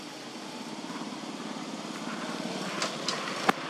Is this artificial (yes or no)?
yes